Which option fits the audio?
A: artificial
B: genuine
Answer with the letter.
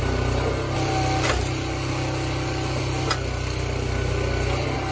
B